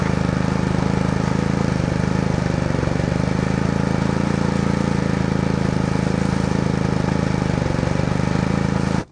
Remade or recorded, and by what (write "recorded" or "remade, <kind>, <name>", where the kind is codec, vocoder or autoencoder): recorded